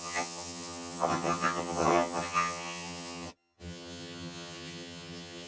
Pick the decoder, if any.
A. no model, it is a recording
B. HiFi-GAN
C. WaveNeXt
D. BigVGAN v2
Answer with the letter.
B